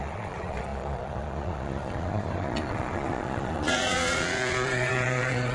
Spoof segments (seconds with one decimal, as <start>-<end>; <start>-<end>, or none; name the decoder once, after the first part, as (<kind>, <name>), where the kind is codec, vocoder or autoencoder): 0.0-5.5 (vocoder, Vocos)